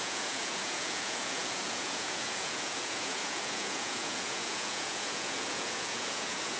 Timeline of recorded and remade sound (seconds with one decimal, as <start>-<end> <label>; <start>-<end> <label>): 0.0-6.6 remade